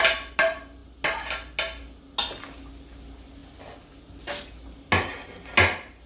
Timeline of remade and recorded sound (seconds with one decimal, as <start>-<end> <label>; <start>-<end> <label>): 0.0-6.1 recorded